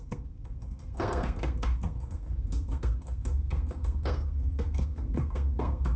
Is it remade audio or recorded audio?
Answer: remade